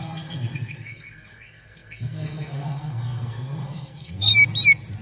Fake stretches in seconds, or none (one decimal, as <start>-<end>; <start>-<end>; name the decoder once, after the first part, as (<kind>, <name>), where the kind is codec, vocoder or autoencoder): 0.0-4.3 (codec, SNAC)